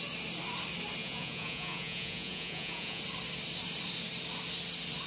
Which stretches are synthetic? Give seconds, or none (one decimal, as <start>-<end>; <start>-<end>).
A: 1.0-3.0